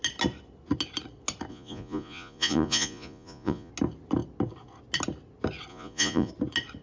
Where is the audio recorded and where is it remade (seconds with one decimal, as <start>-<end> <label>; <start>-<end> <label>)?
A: 0.0-1.5 recorded; 1.5-3.7 remade; 3.7-5.7 recorded; 5.7-6.3 remade; 6.3-6.8 recorded